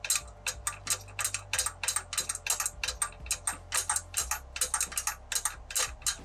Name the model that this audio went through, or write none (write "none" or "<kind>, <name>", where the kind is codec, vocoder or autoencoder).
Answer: none